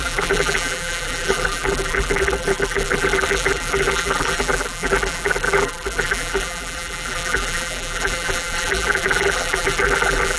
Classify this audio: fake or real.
fake